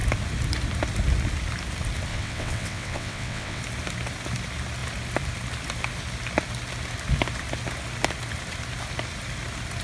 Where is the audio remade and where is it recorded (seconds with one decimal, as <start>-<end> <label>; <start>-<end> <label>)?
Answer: 0.0-2.1 recorded; 2.1-3.6 remade; 3.6-9.8 recorded